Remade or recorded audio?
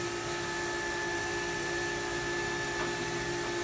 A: recorded